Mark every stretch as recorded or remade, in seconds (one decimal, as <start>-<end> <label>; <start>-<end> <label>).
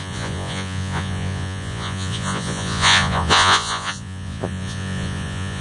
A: 0.0-5.6 remade